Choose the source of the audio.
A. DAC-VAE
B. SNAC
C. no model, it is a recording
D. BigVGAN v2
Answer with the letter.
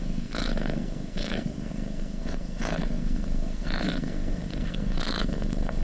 B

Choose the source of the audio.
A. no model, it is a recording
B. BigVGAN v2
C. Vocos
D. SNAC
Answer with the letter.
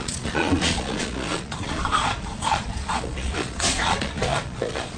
C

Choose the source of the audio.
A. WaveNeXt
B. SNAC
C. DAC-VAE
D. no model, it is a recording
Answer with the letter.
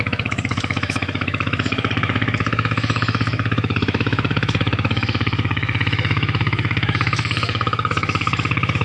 C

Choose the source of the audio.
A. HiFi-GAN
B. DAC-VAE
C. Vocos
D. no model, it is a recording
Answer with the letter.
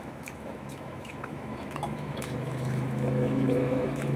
B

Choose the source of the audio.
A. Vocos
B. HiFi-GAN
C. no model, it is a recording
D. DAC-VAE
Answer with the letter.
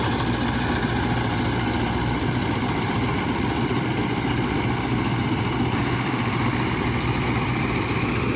C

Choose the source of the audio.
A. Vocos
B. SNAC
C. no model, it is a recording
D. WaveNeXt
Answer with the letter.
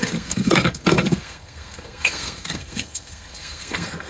B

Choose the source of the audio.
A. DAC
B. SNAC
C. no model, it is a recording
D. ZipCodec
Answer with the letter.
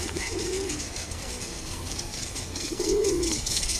B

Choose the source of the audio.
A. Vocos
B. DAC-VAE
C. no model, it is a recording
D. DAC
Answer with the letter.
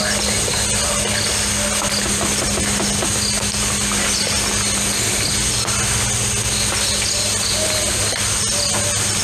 C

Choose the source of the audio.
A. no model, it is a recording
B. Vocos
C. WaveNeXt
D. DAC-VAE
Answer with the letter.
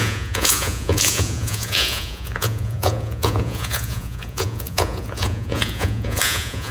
B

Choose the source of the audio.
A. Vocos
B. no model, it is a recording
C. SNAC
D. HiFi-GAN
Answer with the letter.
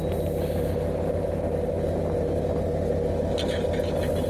B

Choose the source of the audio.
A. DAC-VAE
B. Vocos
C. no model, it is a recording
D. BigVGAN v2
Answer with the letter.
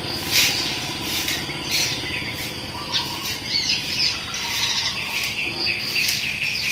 C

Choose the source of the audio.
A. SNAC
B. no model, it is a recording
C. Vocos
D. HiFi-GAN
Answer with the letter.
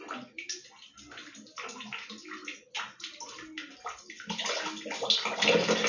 B